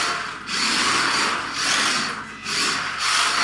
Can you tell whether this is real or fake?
real